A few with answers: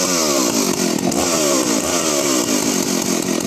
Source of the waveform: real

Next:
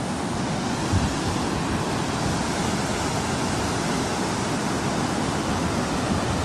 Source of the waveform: real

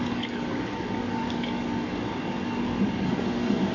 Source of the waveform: fake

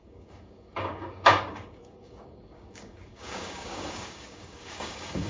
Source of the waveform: fake